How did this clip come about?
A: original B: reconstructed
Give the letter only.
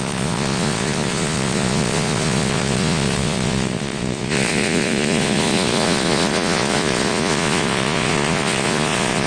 B